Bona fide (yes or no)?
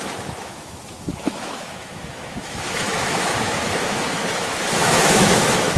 no